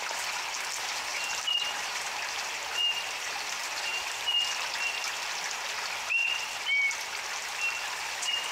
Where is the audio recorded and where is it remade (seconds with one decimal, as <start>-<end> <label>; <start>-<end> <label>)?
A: 0.0-1.1 recorded; 1.1-4.3 remade; 4.3-8.5 recorded